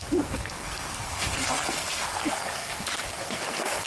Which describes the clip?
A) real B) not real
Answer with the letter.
B